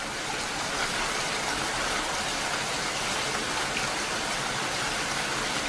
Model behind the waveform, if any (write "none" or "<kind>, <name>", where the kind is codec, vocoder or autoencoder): none